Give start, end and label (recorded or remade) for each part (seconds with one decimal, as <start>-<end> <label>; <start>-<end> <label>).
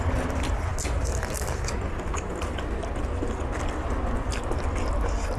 0.0-5.4 recorded